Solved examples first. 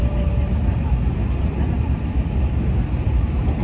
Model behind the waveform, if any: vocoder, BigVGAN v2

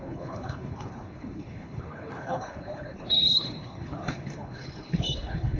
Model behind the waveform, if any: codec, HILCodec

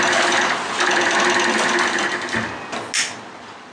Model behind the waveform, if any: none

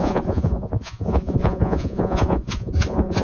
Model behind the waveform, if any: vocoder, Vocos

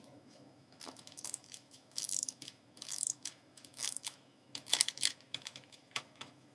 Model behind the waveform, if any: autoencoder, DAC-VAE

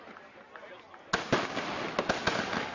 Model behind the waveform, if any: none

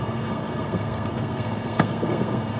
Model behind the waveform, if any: codec, SNAC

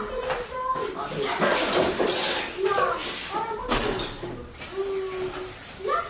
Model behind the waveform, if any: none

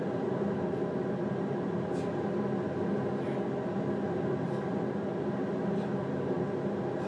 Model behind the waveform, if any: none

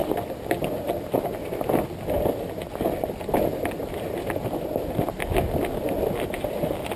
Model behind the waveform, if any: none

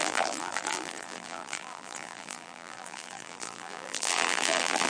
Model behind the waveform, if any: vocoder, BigVGAN v2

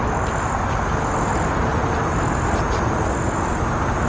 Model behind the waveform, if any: none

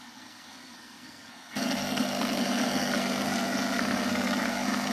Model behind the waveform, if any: codec, SNAC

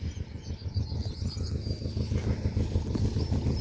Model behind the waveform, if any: none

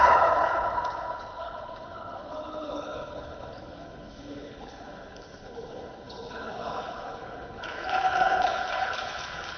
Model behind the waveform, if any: codec, HILCodec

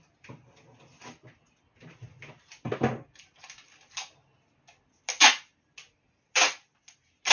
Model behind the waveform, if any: none